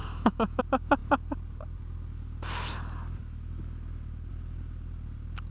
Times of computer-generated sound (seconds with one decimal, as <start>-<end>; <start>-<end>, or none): 0.0-0.6